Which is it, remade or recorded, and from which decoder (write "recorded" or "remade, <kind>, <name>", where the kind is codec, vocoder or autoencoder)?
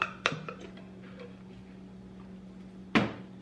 recorded